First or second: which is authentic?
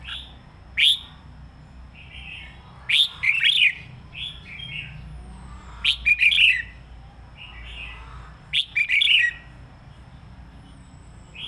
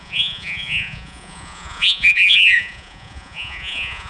first